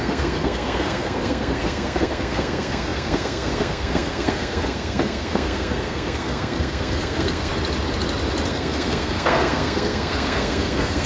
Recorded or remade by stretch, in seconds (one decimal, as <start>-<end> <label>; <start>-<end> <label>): 0.0-7.5 remade; 7.5-8.5 recorded; 8.5-11.1 remade